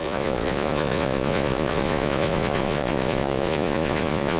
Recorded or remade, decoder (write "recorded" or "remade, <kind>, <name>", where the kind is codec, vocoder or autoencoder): remade, vocoder, Vocos